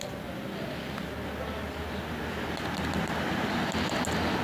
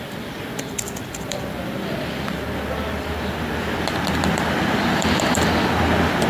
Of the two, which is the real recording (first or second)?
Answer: first